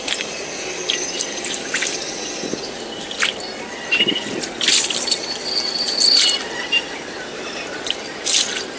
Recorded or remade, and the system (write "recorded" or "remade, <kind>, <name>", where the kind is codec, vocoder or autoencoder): recorded